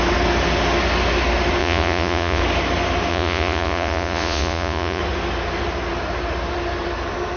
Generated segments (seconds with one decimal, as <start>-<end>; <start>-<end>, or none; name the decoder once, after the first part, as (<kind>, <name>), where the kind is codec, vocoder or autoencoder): 1.6-2.4 (vocoder, Vocos); 3.1-5.0